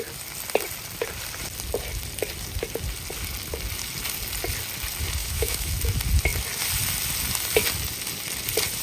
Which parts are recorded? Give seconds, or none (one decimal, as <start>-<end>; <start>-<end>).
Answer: 0.0-5.2; 5.7-8.8